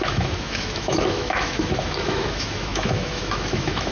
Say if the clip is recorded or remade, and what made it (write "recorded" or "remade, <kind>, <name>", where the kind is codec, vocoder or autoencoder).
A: remade, autoencoder, DAC-VAE